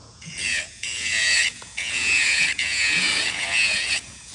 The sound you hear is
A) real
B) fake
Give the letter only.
B